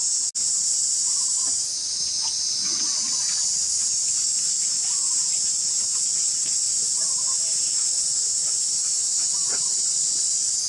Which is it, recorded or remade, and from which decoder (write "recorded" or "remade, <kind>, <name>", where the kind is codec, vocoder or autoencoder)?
recorded